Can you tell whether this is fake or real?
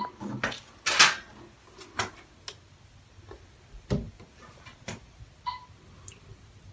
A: real